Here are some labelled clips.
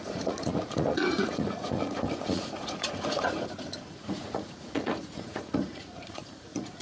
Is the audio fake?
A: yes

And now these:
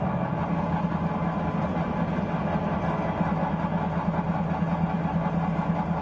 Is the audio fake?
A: no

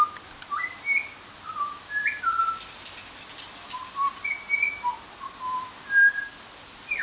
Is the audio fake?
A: no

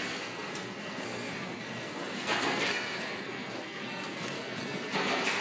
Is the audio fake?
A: yes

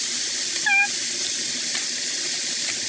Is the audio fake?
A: no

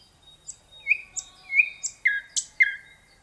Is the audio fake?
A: no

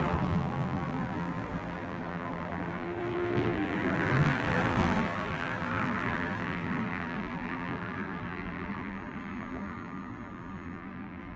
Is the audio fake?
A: yes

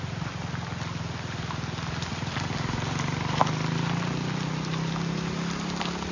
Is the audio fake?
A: no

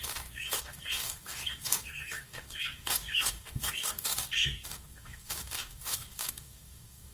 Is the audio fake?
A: yes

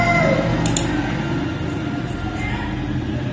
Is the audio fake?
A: no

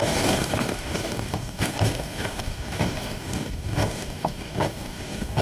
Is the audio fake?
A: yes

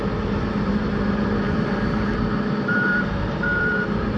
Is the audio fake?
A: yes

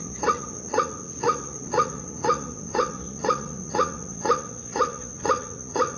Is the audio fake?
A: yes